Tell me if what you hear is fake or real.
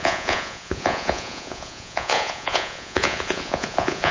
fake